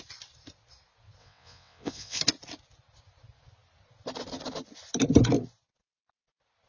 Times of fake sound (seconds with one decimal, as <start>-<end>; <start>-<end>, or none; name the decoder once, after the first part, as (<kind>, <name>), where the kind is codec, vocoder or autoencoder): 1.2-2.2 (vocoder, WaveNeXt)